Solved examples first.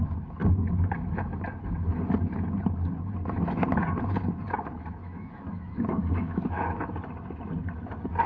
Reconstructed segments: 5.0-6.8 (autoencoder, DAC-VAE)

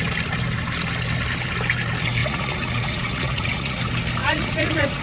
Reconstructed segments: 2.2-3.8 (vocoder, Vocos); 4.2-5.0

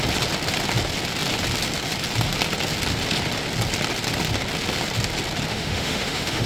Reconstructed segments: 5.5-6.5 (autoencoder, DAC-VAE)

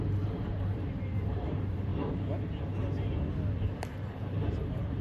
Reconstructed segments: 0.0-1.9 (vocoder, BigVGAN v2); 4.2-5.0

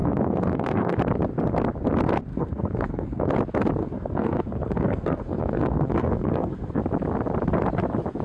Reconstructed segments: 0.0-1.0 (codec, SNAC); 2.3-3.3; 3.8-6.8

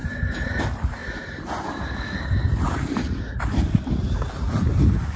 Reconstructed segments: 0.0-1.0 (vocoder, BigVGAN v2); 4.1-5.2